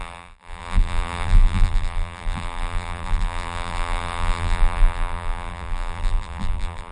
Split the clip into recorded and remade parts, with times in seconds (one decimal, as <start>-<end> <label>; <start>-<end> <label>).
0.0-6.9 remade